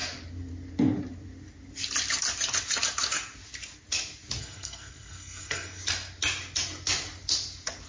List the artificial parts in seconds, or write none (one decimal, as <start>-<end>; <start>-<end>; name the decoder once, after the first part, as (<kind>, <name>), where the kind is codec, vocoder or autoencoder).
4.4-5.8 (codec, SNAC)